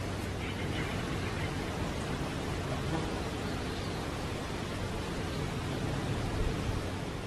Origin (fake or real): real